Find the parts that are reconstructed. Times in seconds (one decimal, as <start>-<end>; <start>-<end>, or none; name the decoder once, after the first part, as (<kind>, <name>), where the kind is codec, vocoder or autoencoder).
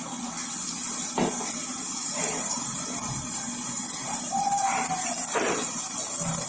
2.0-5.1 (vocoder, BigVGAN v2)